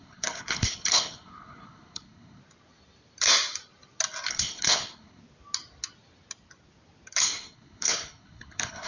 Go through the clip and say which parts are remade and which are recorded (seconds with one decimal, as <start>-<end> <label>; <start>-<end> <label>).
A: 0.0-2.4 remade; 2.4-4.3 recorded; 4.3-5.2 remade; 5.2-7.2 recorded; 7.2-8.9 remade

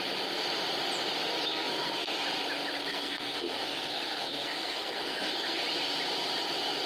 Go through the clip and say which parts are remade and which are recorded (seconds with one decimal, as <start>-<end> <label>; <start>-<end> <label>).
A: 0.0-1.5 recorded; 1.5-2.2 remade; 2.2-2.9 recorded; 2.9-5.6 remade; 5.6-6.9 recorded